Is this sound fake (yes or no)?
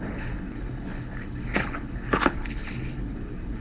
yes